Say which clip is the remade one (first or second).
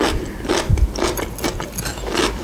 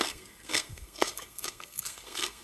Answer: second